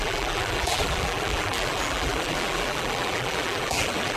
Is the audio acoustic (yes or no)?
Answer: no